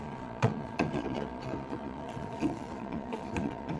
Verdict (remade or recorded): remade